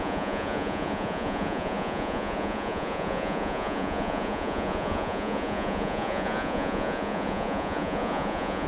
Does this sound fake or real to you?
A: fake